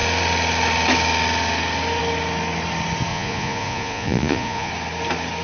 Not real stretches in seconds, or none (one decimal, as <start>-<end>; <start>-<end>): 3.1-4.7